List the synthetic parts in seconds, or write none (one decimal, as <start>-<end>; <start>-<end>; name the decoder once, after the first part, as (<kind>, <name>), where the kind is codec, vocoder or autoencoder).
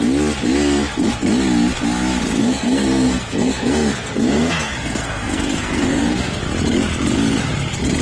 2.4-6.4 (codec, SNAC)